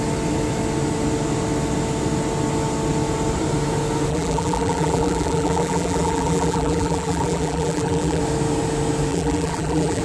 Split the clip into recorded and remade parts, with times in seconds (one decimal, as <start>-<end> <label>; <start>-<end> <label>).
0.0-4.1 recorded; 4.1-8.2 remade; 8.2-9.1 recorded; 9.1-10.0 remade